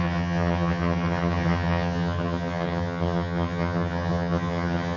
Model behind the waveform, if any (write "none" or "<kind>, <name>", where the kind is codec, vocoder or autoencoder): vocoder, HiFi-GAN